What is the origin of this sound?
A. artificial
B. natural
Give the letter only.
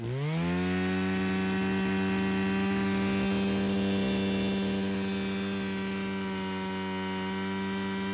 B